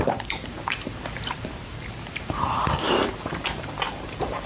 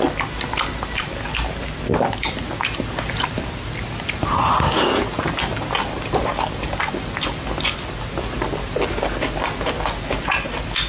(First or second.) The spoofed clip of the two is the first